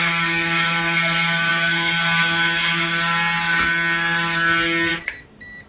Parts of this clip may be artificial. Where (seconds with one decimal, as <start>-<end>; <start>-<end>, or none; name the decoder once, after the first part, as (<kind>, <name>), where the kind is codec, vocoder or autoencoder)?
none